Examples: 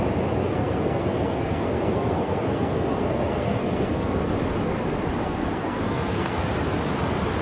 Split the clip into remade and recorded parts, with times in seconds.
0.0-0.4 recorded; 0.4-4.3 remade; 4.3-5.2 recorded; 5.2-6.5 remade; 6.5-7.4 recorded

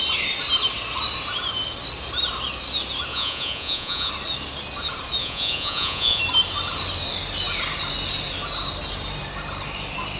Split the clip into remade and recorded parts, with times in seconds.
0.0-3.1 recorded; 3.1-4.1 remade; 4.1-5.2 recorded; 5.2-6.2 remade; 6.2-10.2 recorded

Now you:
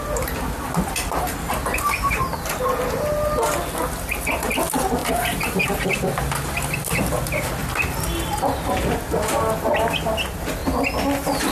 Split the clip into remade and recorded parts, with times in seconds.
0.0-1.7 recorded; 1.7-3.0 remade; 3.0-5.0 recorded; 5.0-5.7 remade; 5.7-11.5 recorded

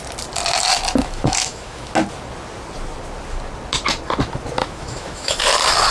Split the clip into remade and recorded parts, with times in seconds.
0.0-1.0 recorded; 1.0-1.9 remade; 1.9-4.6 recorded; 4.6-5.4 remade; 5.4-5.9 recorded